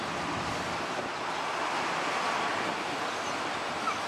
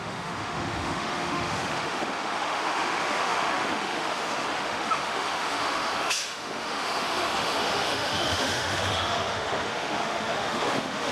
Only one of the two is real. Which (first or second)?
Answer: first